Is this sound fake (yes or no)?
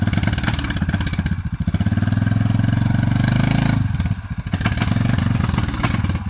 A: no